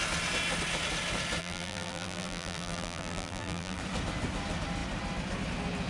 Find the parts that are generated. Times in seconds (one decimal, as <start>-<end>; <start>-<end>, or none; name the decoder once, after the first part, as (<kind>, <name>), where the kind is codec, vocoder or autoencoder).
1.4-3.8 (vocoder, BigVGAN v2)